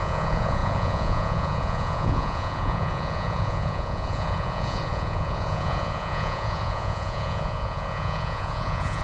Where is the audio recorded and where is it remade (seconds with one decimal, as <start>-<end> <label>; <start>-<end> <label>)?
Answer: 0.0-9.0 remade